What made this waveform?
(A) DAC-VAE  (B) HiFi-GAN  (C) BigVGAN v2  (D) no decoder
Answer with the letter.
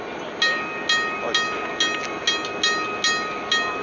D